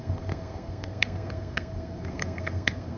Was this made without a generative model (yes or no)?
no